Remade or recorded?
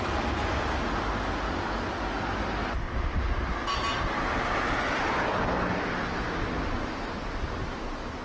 recorded